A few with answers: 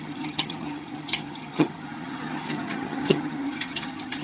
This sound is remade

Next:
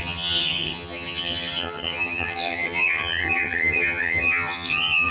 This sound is remade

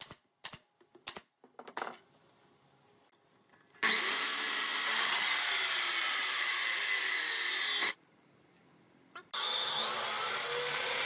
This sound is recorded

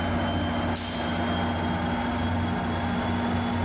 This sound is recorded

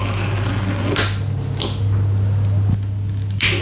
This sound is recorded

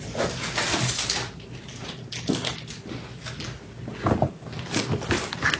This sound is recorded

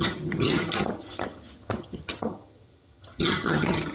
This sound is remade